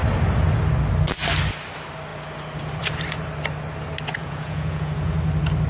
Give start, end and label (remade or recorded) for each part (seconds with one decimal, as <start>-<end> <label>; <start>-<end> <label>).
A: 0.0-4.2 recorded; 4.2-5.1 remade; 5.1-5.7 recorded